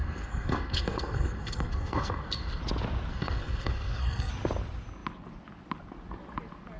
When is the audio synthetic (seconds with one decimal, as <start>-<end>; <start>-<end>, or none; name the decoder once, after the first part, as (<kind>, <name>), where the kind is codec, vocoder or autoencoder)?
0.0-2.6 (codec, SNAC); 3.1-4.3